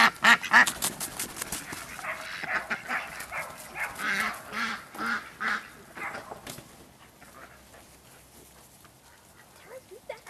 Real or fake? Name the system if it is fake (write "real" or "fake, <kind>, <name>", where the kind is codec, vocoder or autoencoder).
real